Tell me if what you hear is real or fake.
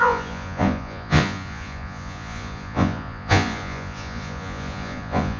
fake